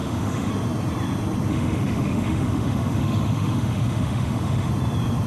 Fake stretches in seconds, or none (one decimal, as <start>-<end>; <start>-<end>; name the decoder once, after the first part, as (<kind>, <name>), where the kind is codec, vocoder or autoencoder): 0.0-0.5 (autoencoder, DAC-VAE); 1.5-4.7